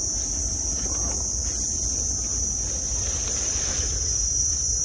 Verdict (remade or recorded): recorded